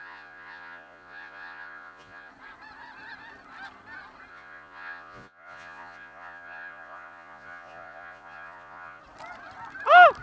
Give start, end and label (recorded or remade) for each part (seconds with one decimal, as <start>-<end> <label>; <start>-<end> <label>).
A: 0.0-2.3 remade; 2.3-4.3 recorded; 4.3-9.0 remade; 9.0-10.2 recorded